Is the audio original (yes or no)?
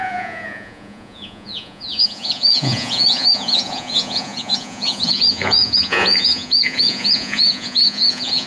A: no